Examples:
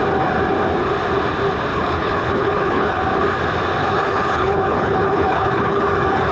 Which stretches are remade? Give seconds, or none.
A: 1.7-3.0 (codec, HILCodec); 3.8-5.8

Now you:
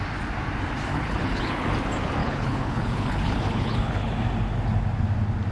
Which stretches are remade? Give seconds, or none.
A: 0.9-1.7 (codec, HILCodec); 2.2-4.1

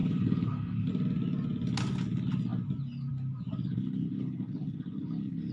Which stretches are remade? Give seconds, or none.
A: 0.0-0.9 (codec, HILCodec); 3.7-5.5

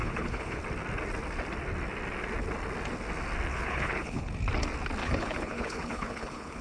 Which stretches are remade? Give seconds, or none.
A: 0.0-0.6 (codec, HILCodec); 3.5-4.3; 5.0-6.6

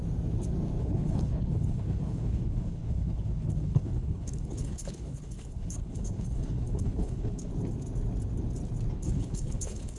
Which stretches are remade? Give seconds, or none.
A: 0.8-7.5 (codec, HILCodec); 8.9-10.0

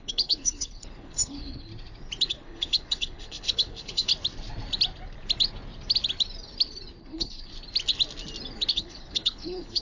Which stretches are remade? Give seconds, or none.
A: 0.0-1.7 (codec, HILCodec); 2.3-4.1; 7.0-7.5; 8.7-9.8